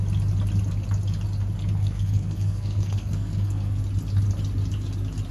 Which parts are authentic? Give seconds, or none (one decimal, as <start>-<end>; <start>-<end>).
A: 0.0-1.8; 3.8-5.3